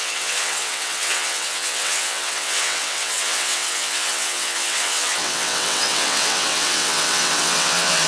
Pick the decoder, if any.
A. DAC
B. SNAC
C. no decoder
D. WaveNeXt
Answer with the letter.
D